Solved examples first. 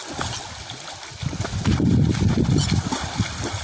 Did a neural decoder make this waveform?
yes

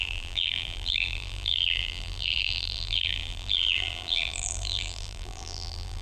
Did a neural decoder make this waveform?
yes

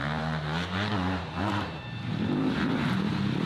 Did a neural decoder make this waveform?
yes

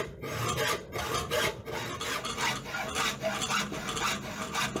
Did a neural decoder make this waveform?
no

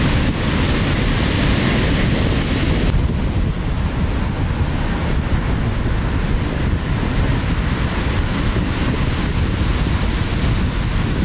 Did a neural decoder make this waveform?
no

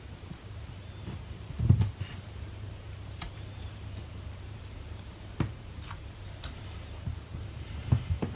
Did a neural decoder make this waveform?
yes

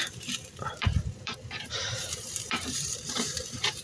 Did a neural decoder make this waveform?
yes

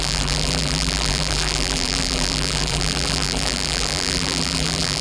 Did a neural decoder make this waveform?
yes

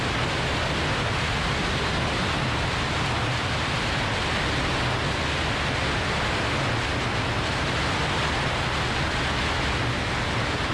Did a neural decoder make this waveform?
no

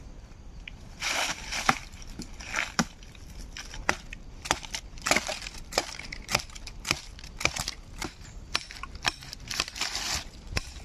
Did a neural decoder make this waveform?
yes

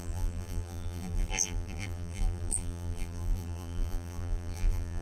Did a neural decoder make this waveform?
yes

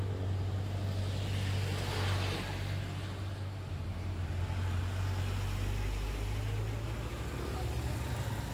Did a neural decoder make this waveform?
no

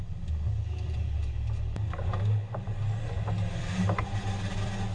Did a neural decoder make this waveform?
no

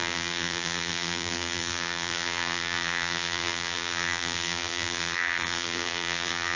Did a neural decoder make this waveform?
yes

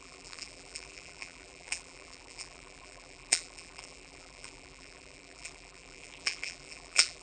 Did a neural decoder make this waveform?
yes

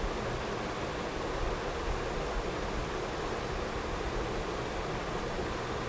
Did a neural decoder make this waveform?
no